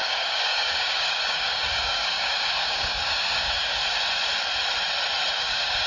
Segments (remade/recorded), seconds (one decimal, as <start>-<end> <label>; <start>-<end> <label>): 0.0-3.8 remade; 3.8-5.4 recorded; 5.4-5.9 remade